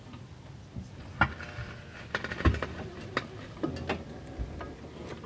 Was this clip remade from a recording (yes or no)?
no